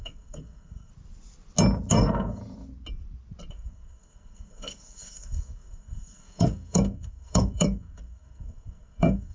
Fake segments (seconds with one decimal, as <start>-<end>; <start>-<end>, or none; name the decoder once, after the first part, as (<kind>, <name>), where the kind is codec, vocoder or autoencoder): 0.0-0.9 (codec, SNAC); 1.9-2.4; 3.5-9.3